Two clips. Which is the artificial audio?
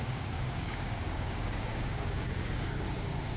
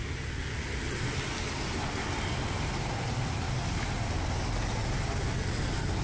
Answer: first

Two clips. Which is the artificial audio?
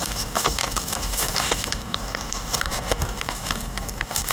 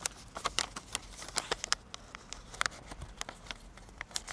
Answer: first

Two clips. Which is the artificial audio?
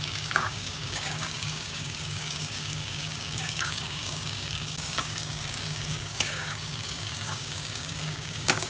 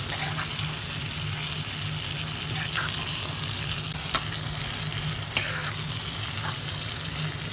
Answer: first